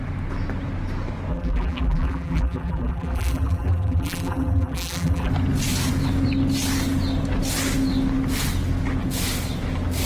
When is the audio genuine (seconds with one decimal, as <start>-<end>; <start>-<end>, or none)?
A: 0.0-1.3; 5.3-10.1